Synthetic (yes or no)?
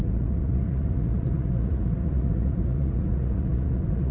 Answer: yes